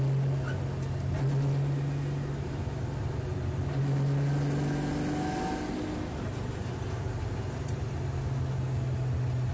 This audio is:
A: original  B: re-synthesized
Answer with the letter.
A